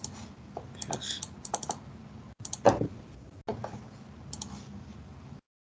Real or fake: real